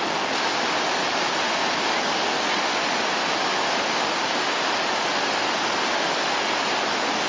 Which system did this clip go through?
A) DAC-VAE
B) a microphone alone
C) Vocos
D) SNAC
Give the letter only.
B